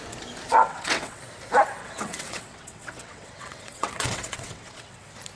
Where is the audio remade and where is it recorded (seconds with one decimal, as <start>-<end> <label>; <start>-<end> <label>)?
0.0-0.5 recorded; 0.5-1.2 remade; 1.2-1.8 recorded; 1.8-5.0 remade; 5.0-5.4 recorded